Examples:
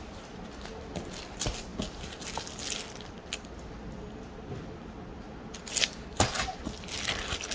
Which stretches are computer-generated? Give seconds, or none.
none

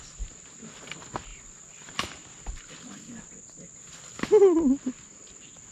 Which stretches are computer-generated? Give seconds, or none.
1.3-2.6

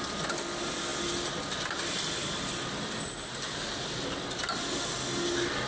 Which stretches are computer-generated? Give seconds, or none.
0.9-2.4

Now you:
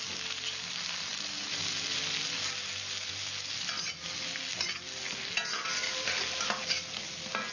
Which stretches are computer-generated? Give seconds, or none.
none